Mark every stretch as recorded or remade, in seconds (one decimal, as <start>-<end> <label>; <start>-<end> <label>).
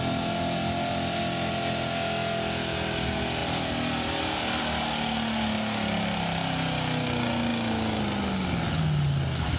0.0-3.4 recorded; 3.4-4.6 remade; 4.6-9.6 recorded